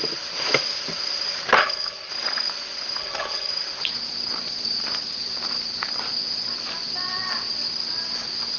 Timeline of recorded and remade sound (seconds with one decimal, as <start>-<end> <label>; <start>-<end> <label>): 0.0-1.6 recorded; 1.6-2.1 remade; 2.1-3.0 recorded; 3.0-3.5 remade; 3.5-8.6 recorded

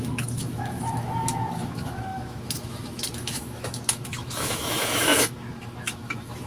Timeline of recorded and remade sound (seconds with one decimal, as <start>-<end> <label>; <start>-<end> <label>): 0.0-6.5 remade

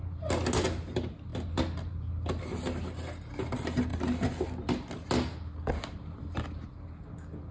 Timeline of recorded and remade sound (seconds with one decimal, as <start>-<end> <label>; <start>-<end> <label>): 0.0-7.5 recorded

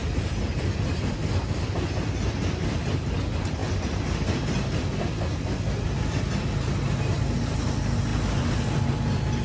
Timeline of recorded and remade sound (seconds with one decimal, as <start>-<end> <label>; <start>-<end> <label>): 0.0-0.9 remade; 0.9-9.4 recorded